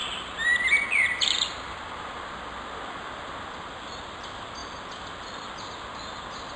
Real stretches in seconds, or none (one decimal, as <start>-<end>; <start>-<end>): 0.0-6.6